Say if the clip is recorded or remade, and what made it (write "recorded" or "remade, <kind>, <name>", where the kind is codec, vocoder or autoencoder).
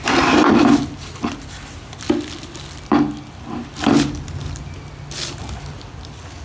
recorded